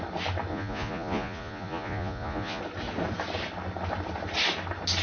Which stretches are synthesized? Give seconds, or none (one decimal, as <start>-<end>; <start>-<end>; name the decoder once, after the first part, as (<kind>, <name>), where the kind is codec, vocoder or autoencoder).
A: 0.5-2.6 (vocoder, Vocos)